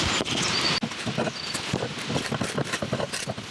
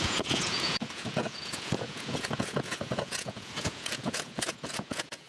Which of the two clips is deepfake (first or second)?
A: second